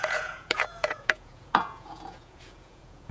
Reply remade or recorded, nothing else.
remade